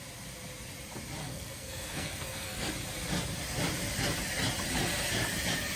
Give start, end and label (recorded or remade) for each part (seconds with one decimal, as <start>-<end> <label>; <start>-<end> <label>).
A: 0.0-1.2 recorded; 1.2-2.7 remade; 2.7-5.8 recorded